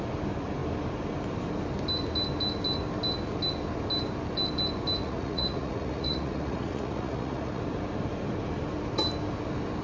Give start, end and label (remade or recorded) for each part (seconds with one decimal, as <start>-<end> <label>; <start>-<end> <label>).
0.0-5.0 recorded; 5.0-7.6 remade; 7.6-9.8 recorded